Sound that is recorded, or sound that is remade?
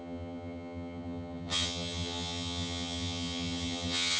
remade